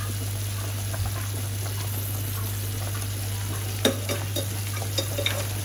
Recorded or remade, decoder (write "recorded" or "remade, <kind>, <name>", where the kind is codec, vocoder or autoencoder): recorded